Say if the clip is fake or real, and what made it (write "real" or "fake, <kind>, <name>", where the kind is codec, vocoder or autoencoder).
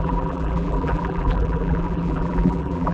fake, vocoder, BigVGAN v2